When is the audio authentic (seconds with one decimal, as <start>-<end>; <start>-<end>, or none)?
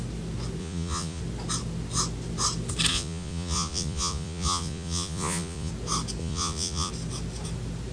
0.0-0.6; 1.2-2.9; 5.7-6.2; 6.9-7.9